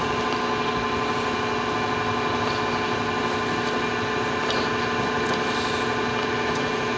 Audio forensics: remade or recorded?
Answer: recorded